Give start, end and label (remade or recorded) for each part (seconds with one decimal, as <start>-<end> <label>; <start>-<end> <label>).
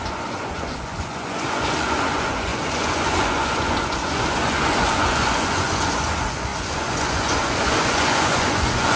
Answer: 0.0-9.0 remade